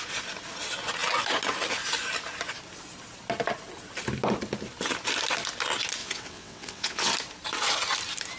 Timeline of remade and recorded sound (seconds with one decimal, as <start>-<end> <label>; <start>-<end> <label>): 0.0-6.0 recorded; 6.0-7.1 remade; 7.1-8.4 recorded